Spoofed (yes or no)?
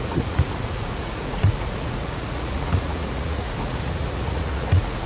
yes